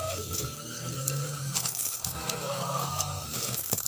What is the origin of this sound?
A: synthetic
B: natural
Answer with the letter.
A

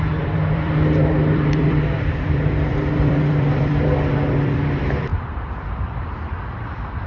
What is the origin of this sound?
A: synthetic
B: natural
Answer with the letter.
A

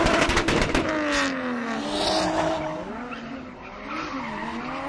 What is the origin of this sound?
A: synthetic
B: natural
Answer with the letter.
B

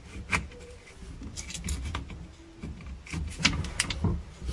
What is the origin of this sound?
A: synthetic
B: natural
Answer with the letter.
B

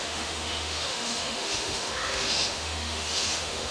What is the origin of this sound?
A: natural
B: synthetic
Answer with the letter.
B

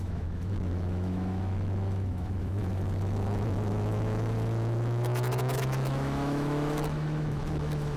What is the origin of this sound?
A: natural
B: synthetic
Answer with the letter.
B